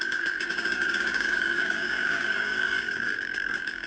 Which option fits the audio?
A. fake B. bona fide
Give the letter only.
A